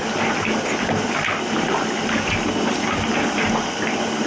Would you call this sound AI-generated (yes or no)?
no